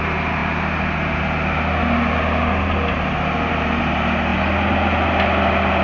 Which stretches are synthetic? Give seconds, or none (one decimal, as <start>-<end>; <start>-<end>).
none

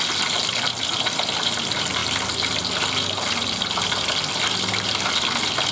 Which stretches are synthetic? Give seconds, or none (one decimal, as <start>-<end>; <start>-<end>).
none